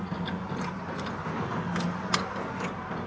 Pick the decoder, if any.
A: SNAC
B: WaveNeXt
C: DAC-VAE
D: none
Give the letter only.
D